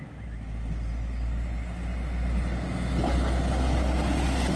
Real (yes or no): yes